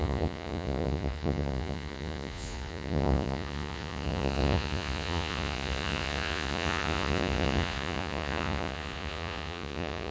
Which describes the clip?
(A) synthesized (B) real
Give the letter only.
A